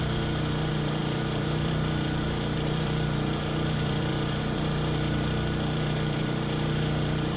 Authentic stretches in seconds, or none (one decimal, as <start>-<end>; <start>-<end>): none